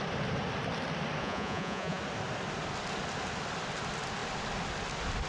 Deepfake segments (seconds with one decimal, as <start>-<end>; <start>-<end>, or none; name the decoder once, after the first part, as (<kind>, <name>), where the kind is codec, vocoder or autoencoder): 1.2-2.0 (vocoder, Vocos)